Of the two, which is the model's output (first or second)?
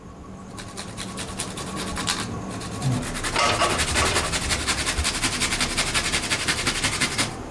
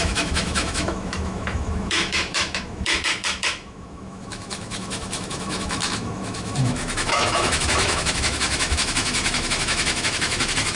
second